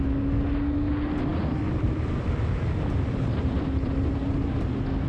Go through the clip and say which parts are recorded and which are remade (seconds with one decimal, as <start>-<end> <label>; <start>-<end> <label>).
0.0-1.3 recorded; 1.3-4.2 remade; 4.2-5.1 recorded